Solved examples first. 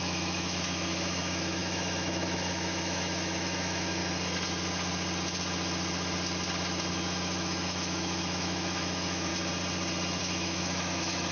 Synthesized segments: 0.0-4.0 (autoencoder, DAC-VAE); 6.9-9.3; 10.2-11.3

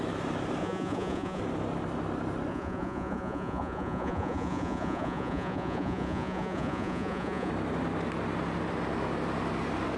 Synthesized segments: 0.6-1.4 (vocoder, Vocos); 2.5-7.5

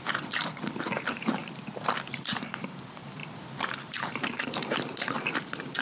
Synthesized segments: 0.0-1.4 (vocoder, BigVGAN v2); 2.1-3.2; 3.7-5.8

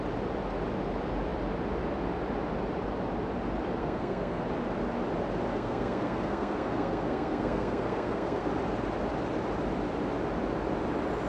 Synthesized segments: 3.8-4.4 (codec, SNAC); 5.5-8.5

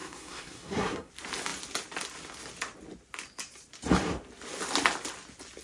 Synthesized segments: 0.0-1.1 (codec, SNAC)

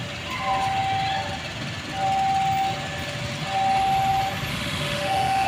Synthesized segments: 4.5-5.5 (autoencoder, DAC-VAE)

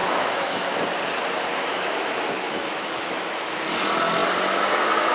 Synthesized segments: 0.0-0.7 (autoencoder, DAC-VAE); 1.5-3.7